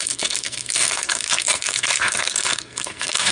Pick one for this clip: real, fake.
fake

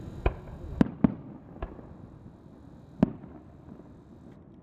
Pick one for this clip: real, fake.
real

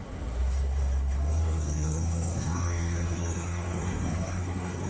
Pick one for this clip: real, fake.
fake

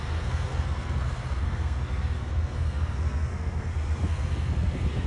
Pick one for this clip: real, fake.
fake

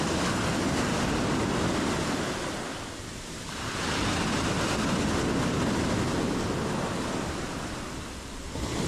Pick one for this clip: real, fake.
real